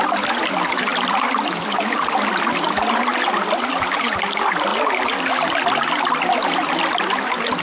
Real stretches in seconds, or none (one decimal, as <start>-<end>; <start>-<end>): 0.0-0.9; 1.9-3.1; 3.7-4.7; 6.8-7.6